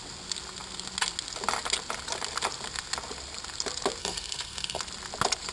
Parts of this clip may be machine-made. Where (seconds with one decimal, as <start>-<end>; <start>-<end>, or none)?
4.0-4.8